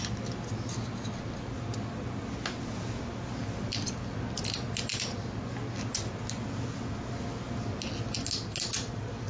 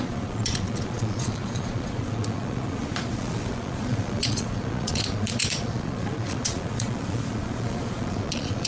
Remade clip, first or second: second